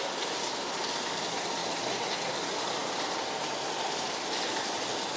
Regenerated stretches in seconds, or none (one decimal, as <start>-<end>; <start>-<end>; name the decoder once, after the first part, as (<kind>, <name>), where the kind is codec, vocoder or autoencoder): 2.8-3.7 (vocoder, BigVGAN v2)